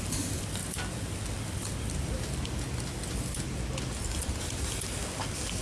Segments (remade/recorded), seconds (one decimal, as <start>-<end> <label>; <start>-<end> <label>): 0.0-5.6 recorded